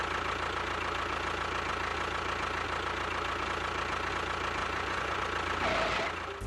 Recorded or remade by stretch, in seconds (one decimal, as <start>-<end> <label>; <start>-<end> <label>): 0.0-4.6 recorded; 4.6-5.2 remade; 5.2-6.5 recorded